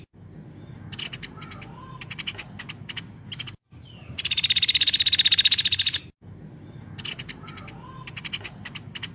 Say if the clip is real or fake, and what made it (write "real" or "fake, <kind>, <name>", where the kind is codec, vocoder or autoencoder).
real